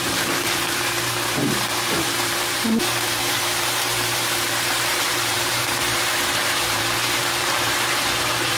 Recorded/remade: remade